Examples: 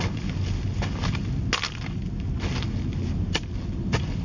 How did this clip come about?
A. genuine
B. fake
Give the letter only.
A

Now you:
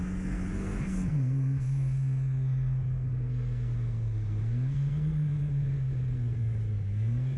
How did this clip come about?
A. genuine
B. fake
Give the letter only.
B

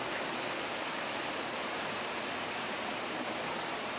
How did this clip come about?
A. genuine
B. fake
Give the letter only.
A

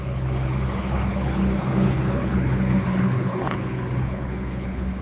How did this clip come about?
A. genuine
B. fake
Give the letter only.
B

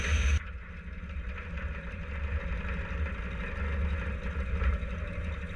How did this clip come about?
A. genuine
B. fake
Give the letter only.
A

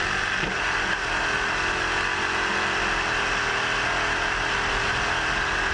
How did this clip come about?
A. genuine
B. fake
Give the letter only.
A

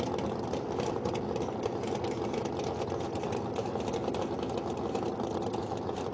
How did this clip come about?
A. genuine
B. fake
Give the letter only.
A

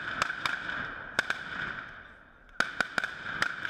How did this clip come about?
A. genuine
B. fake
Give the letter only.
A